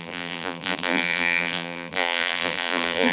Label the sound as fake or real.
fake